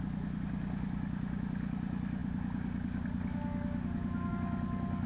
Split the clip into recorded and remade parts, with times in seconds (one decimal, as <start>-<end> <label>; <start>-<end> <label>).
0.0-5.1 recorded